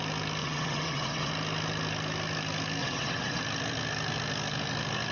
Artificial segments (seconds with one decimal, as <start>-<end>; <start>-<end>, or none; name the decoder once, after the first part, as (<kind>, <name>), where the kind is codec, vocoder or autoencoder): 0.4-1.3 (vocoder, WaveNeXt); 2.8-3.4